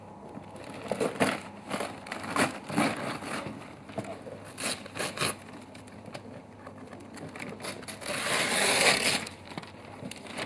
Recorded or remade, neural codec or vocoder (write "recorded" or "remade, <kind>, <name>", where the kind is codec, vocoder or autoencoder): recorded